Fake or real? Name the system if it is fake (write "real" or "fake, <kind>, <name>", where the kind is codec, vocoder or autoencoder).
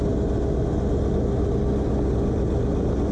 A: real